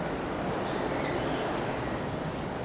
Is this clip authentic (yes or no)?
yes